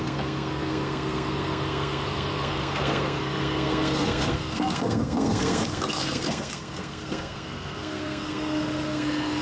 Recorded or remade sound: remade